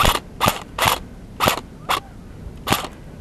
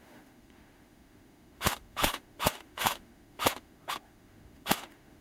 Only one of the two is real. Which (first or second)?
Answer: first